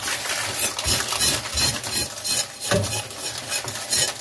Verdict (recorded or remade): recorded